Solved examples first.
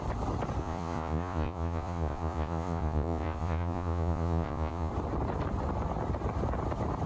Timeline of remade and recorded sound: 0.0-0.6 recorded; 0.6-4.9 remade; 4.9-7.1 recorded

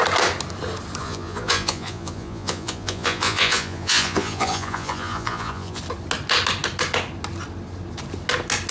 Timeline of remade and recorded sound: 0.0-1.0 recorded; 1.0-5.8 remade; 5.8-8.7 recorded

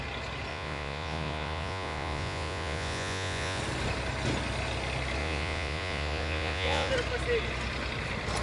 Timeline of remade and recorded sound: 0.0-0.5 recorded; 0.5-3.6 remade; 3.6-5.2 recorded; 5.2-6.9 remade; 6.9-8.4 recorded

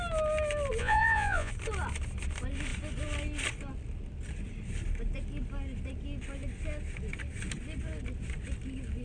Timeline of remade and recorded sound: 0.0-0.8 recorded; 0.8-1.5 remade; 1.5-9.0 recorded

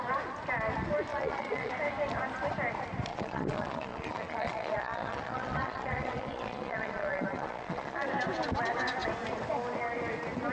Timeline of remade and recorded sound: 0.0-1.1 recorded; 1.1-1.7 remade; 1.7-3.1 recorded; 3.1-8.1 remade; 8.1-10.5 recorded

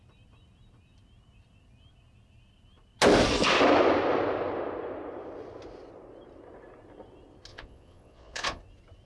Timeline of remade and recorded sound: 0.0-7.5 recorded; 7.5-8.6 remade; 8.6-9.1 recorded